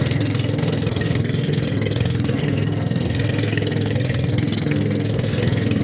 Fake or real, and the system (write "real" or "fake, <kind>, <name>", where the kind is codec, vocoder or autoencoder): fake, codec, SNAC